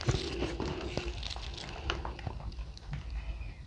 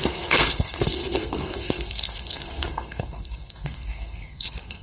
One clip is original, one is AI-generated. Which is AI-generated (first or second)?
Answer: second